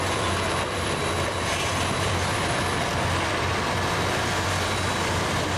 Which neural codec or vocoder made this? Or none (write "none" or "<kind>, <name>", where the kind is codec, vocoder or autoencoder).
vocoder, BigVGAN v2